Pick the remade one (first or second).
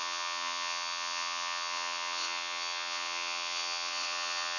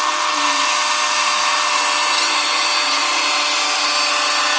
first